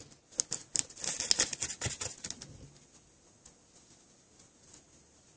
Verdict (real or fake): real